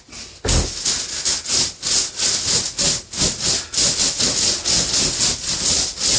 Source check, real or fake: real